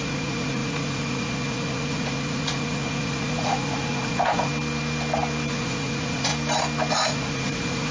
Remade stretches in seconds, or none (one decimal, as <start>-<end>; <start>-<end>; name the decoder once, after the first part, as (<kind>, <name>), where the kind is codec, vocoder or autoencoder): 0.0-4.5 (vocoder, Vocos); 5.5-6.3; 6.9-7.9